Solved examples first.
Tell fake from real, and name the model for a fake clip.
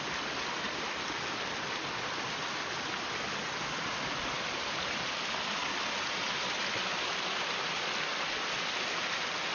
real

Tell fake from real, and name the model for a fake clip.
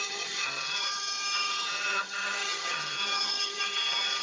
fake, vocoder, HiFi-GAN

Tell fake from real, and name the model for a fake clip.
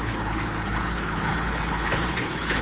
fake, codec, HILCodec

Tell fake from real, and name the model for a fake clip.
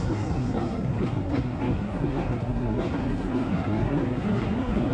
fake, codec, SNAC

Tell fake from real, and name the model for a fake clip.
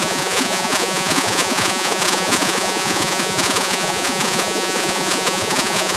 fake, vocoder, Vocos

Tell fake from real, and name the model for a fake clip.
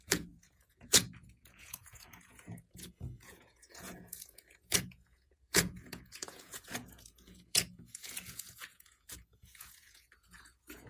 fake, vocoder, Vocos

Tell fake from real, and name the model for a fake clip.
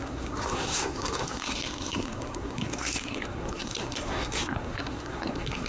fake, codec, SNAC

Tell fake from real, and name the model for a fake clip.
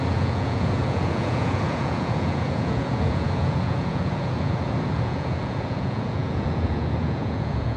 fake, vocoder, Vocos